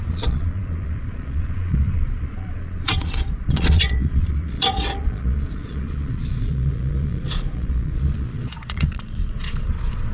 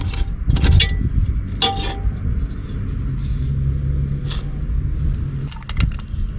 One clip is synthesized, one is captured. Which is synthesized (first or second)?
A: first